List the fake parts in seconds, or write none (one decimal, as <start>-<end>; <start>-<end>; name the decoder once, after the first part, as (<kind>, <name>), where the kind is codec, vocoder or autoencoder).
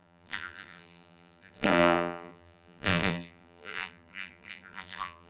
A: 0.0-5.3 (vocoder, BigVGAN v2)